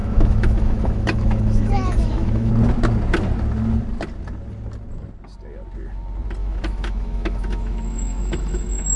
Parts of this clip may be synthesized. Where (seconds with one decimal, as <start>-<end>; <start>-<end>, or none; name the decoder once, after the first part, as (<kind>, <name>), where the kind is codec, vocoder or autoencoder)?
0.0-2.5 (autoencoder, DAC-VAE); 6.4-9.0